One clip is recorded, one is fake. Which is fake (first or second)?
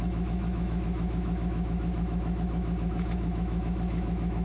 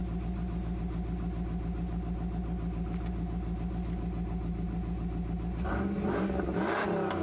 first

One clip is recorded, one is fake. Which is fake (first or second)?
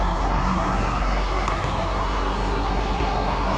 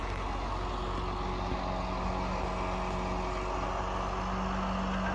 first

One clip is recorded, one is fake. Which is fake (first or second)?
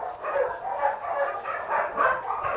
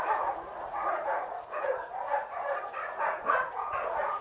second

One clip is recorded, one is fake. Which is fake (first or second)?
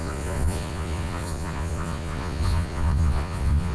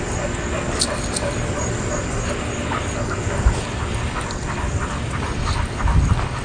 first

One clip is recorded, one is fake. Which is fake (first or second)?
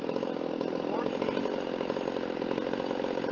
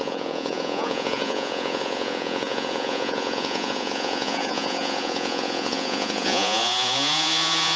second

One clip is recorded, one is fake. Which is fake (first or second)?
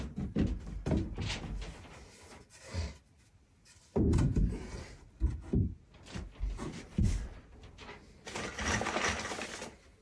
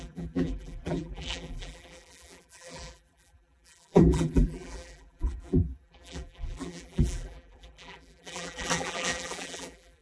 second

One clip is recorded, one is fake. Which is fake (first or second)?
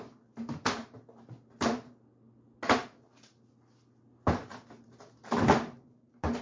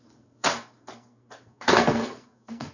second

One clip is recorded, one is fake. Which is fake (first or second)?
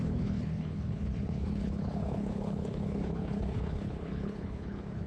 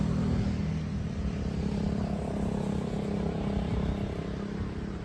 first